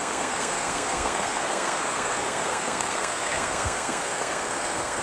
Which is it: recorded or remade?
remade